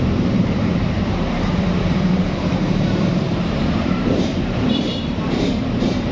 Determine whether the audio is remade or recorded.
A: remade